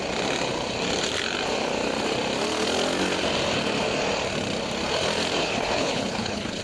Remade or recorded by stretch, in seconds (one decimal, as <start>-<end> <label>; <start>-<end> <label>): 0.0-5.4 recorded; 5.4-6.6 remade